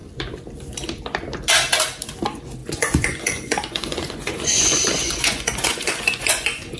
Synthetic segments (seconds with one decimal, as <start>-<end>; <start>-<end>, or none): 2.6-6.8